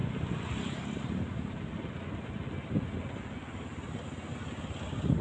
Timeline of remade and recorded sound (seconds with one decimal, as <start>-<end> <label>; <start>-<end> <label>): 0.0-5.2 recorded